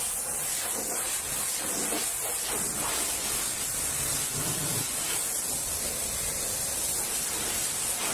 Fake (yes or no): no